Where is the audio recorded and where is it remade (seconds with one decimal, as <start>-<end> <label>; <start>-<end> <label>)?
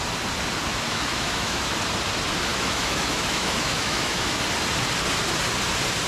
0.0-0.7 recorded; 0.7-1.7 remade; 1.7-2.5 recorded; 2.5-4.4 remade; 4.4-6.1 recorded